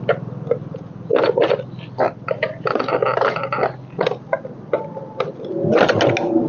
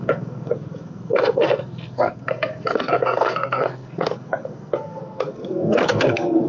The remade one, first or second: second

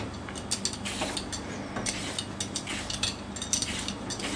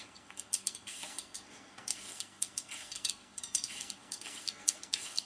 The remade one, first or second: second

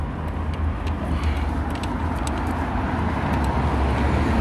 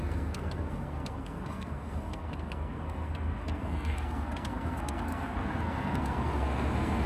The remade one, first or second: second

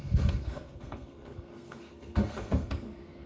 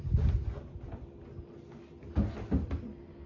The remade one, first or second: first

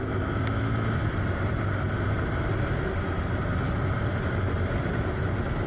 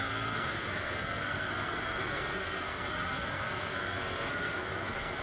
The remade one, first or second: second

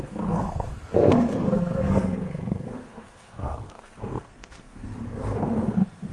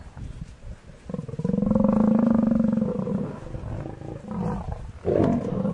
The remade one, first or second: first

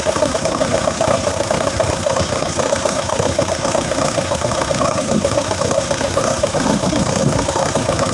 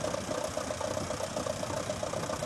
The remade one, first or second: first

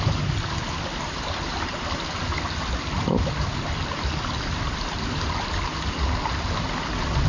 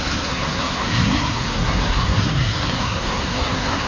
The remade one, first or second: second